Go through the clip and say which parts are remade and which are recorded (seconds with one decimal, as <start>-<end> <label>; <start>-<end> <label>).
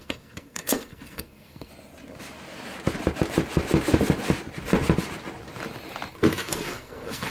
0.0-1.7 remade; 1.7-6.1 recorded; 6.1-7.3 remade